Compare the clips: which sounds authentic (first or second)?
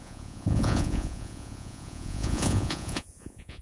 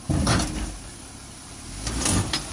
second